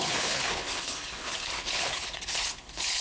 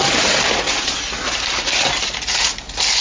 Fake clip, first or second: first